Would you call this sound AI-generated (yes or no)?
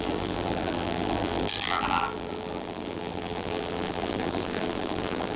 yes